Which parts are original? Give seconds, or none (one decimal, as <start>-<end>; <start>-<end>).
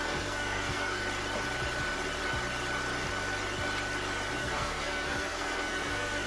1.0-4.4